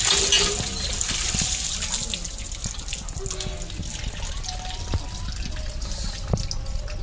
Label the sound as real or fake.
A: real